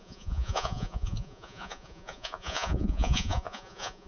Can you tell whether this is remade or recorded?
remade